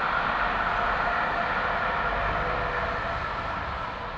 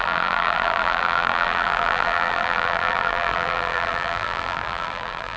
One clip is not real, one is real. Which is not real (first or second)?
second